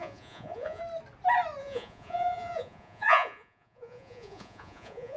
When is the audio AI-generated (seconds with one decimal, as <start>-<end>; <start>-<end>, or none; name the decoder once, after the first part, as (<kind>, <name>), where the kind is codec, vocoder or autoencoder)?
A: 0.0-0.8 (vocoder, Vocos); 1.6-5.2